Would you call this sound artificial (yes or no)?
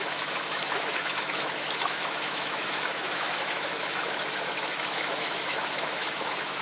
yes